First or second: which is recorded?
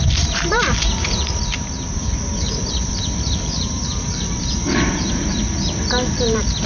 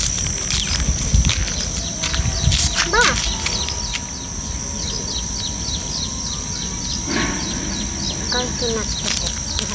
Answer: second